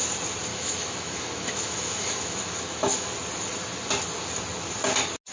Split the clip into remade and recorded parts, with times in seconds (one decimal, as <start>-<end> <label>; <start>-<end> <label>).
0.0-0.5 recorded; 0.5-3.1 remade; 3.1-5.3 recorded